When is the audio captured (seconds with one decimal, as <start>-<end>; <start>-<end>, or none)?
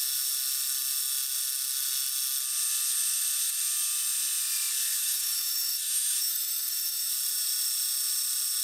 0.0-5.0; 7.1-8.6